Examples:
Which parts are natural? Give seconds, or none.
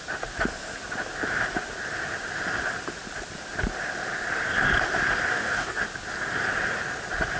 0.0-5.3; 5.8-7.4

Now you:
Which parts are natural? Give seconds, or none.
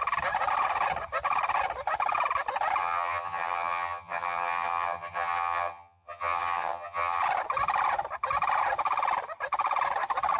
0.0-2.8; 7.2-10.4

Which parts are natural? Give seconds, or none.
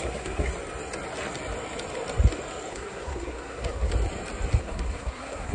0.5-2.7; 3.9-4.6